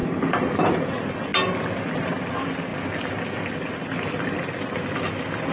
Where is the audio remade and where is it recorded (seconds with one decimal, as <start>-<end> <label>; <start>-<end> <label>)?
0.0-5.5 recorded